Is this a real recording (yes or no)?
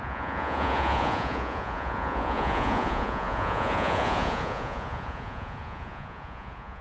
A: no